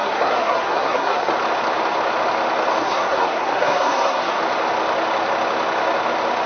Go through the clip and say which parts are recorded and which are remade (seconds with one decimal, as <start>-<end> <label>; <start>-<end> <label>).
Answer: 0.0-1.3 remade; 1.3-2.8 recorded; 2.8-4.4 remade; 4.4-6.5 recorded

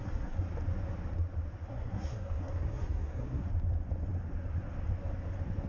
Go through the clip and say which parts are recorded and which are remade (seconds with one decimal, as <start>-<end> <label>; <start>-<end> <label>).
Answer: 0.0-0.5 remade; 0.5-1.7 recorded; 1.7-3.4 remade; 3.4-5.7 recorded